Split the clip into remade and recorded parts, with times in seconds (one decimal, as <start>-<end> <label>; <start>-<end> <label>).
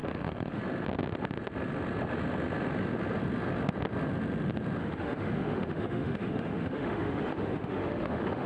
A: 0.0-0.6 remade; 0.6-4.8 recorded; 4.8-8.5 remade